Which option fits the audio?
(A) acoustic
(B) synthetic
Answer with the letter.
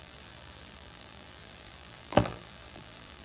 B